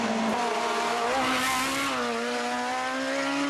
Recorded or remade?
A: recorded